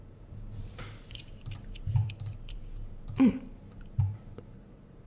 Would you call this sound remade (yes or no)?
yes